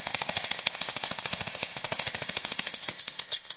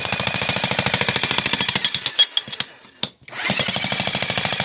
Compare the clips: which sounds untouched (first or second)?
second